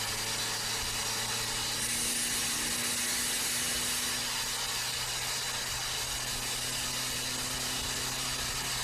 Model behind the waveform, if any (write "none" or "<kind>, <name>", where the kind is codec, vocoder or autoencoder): none